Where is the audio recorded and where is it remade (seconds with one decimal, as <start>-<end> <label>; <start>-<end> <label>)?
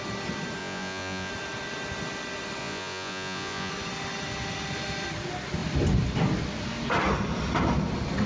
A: 0.0-0.6 recorded; 0.6-1.3 remade; 1.3-2.6 recorded; 2.6-3.7 remade; 3.7-8.3 recorded